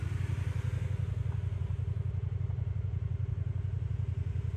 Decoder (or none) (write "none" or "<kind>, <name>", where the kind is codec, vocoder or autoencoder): none